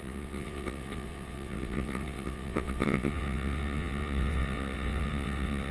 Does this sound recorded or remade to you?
remade